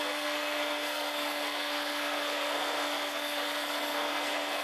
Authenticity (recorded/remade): remade